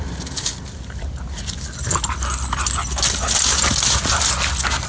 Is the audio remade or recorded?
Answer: recorded